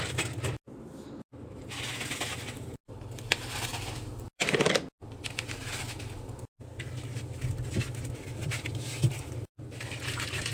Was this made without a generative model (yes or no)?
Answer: yes